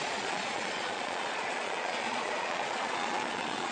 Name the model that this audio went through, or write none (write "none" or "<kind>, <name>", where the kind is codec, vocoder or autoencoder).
vocoder, Vocos